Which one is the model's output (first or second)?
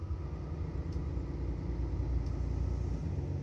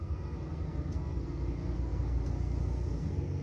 second